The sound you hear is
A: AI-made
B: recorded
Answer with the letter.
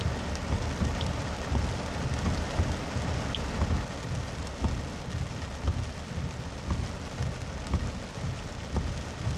B